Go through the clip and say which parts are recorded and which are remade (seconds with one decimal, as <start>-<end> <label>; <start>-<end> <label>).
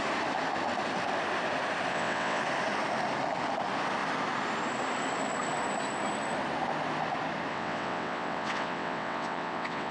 0.0-1.9 recorded; 1.9-2.4 remade; 2.4-7.5 recorded; 7.5-9.9 remade